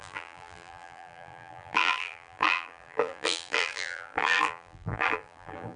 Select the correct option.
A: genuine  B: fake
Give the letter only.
B